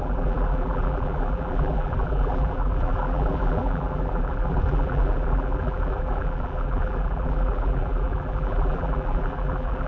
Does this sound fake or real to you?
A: fake